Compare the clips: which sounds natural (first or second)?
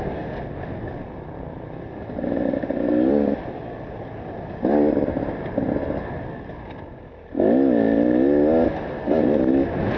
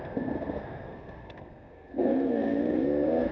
first